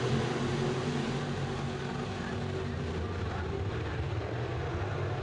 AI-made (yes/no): no